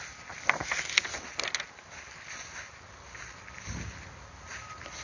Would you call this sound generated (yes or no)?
no